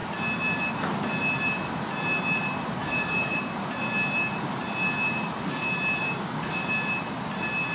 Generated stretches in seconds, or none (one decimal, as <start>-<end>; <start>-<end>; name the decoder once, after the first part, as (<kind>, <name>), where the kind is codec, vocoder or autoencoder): 2.8-3.4 (codec, DAC); 6.0-6.7